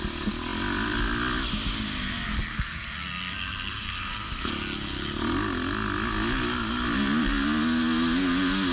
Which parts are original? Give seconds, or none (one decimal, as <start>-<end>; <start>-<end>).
0.0-2.5; 4.5-8.7